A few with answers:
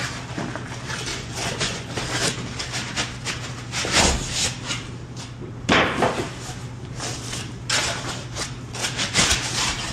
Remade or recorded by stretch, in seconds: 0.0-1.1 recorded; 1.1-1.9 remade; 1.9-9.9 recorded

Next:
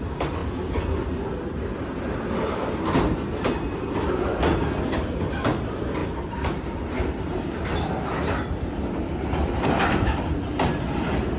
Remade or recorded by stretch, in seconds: 0.0-11.4 recorded

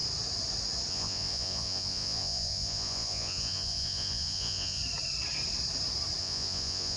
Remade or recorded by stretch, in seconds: 0.0-0.9 recorded; 0.9-4.8 remade; 4.8-6.2 recorded; 6.2-7.0 remade

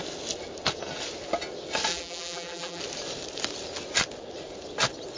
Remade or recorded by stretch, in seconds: 0.0-1.9 recorded; 1.9-2.8 remade; 2.8-5.2 recorded